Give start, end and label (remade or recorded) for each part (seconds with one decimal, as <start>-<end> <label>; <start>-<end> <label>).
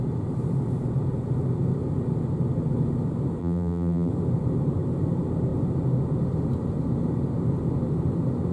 0.0-3.4 recorded; 3.4-4.1 remade; 4.1-8.5 recorded